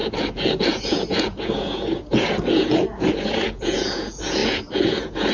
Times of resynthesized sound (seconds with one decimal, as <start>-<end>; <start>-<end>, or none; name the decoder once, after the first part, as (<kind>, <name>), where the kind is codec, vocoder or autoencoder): 0.0-5.3 (vocoder, Vocos)